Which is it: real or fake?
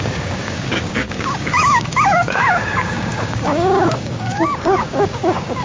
fake